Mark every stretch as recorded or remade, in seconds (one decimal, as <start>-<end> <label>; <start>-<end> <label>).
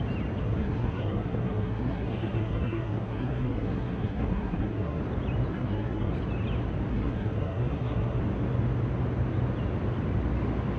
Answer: 0.0-0.4 recorded; 0.4-5.0 remade; 5.0-5.5 recorded; 5.5-6.1 remade; 6.1-6.9 recorded; 6.9-8.2 remade; 8.2-10.8 recorded